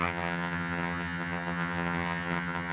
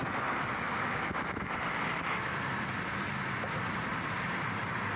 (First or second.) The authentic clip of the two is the second